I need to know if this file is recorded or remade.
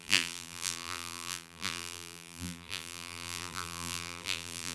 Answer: remade